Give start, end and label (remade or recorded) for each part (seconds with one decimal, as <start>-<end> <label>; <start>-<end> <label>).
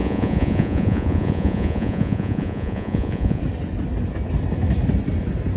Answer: 0.0-3.4 remade; 3.4-5.6 recorded